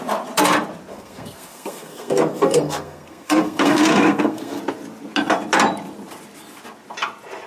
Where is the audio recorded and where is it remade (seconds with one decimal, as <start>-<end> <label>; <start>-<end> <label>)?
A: 0.0-0.9 recorded; 0.9-4.6 remade; 4.6-7.5 recorded

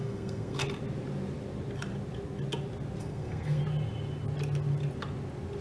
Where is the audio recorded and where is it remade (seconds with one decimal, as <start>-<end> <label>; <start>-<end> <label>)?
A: 0.0-0.6 remade; 0.6-3.0 recorded; 3.0-3.6 remade; 3.6-5.6 recorded

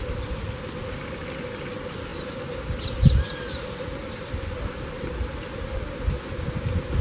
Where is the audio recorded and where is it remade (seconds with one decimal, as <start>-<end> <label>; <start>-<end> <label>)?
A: 0.0-7.0 recorded

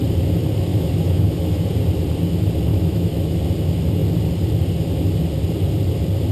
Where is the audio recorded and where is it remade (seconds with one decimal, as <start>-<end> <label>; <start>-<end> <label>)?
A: 0.0-0.7 recorded; 0.7-1.6 remade; 1.6-2.7 recorded; 2.7-3.4 remade; 3.4-6.3 recorded

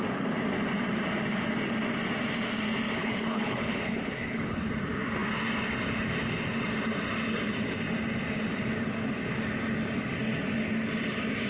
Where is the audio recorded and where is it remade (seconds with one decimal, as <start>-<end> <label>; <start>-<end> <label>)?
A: 0.0-3.0 recorded; 3.0-4.7 remade; 4.7-11.5 recorded

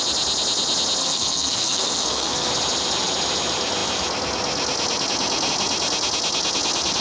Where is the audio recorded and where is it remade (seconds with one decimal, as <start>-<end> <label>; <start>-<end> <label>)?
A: 0.0-1.0 recorded; 1.0-2.5 remade; 2.5-7.0 recorded

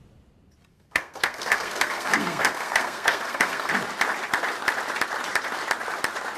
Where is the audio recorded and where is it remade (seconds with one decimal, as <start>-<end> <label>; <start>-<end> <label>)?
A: 0.0-0.7 recorded; 0.7-3.7 remade; 3.7-6.4 recorded